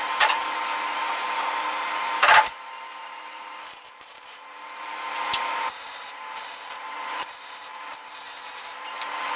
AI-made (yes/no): yes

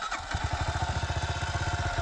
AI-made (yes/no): no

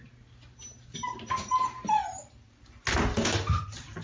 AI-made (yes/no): no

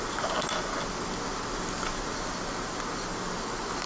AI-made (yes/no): no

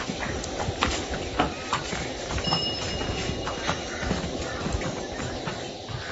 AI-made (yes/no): no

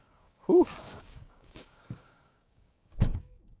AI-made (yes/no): yes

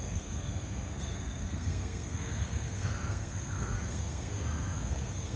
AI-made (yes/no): yes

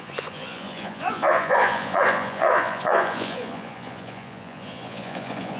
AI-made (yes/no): yes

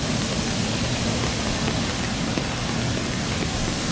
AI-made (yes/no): no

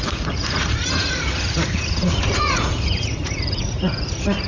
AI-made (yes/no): yes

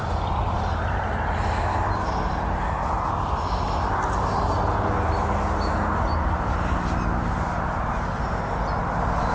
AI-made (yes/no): no